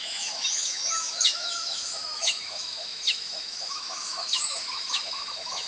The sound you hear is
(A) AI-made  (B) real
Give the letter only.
A